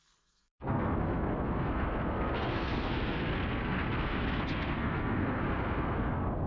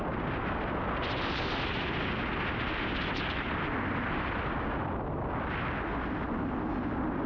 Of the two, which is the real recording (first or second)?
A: second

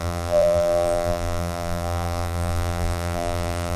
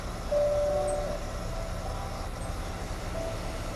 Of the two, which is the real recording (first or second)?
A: second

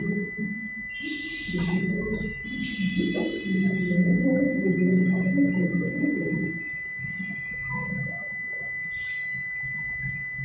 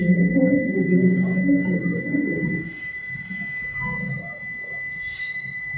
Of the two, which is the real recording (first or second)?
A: first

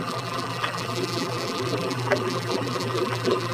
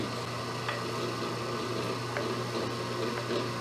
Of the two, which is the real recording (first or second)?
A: second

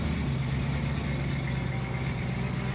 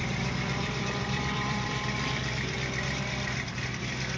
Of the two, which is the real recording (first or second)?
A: first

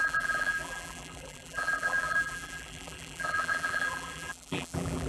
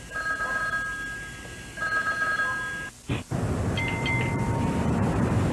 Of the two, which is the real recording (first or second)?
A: second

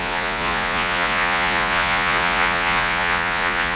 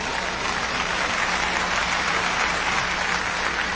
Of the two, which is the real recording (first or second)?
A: second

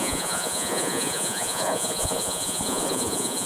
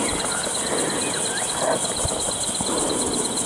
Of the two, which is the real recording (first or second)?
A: second